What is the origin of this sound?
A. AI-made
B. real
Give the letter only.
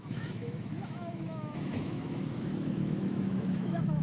A